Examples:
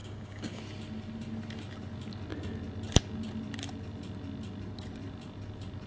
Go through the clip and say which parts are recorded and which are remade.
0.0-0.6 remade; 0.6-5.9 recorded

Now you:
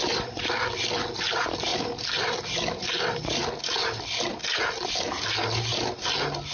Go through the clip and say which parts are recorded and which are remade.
0.0-6.5 recorded

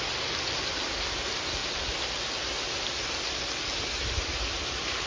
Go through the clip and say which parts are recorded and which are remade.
0.0-5.1 recorded